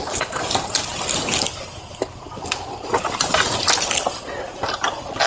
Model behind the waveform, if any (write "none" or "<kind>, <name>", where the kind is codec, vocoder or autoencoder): none